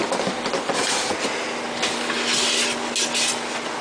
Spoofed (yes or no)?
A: no